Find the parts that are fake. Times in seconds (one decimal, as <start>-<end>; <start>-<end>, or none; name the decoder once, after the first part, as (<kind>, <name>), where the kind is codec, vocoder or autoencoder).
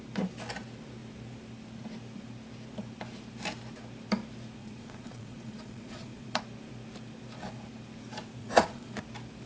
4.6-6.4 (vocoder, Vocos); 8.4-9.0